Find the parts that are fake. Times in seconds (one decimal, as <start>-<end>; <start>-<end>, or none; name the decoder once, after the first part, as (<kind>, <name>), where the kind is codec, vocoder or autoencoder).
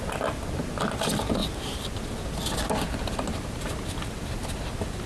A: none